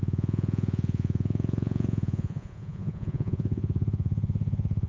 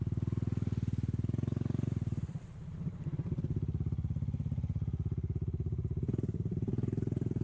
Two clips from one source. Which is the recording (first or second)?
second